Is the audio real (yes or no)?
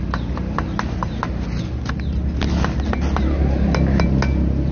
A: yes